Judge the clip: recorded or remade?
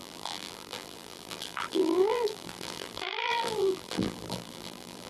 remade